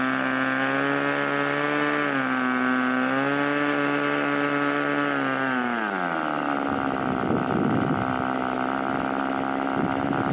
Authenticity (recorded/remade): recorded